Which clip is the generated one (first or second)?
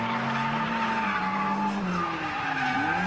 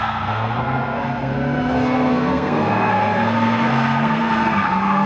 second